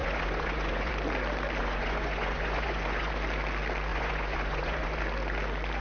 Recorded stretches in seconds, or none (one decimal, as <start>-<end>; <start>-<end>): 0.9-1.6; 3.1-3.9; 5.0-5.8